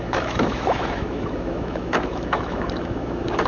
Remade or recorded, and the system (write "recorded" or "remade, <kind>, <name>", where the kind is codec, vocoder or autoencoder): remade, autoencoder, DAC-VAE